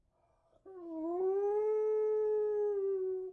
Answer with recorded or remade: recorded